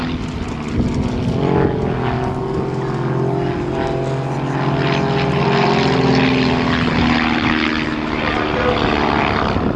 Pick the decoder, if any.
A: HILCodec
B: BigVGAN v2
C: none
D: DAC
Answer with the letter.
C